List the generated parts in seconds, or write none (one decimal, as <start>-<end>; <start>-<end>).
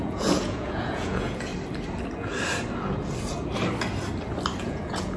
0.0-1.5; 4.6-5.2